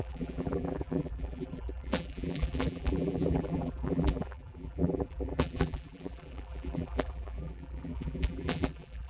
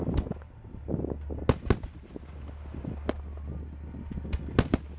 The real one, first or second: second